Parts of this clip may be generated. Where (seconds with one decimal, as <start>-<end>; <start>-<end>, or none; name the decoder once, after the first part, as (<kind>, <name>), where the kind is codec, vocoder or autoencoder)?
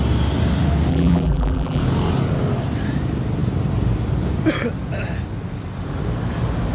0.9-1.8 (vocoder, BigVGAN v2)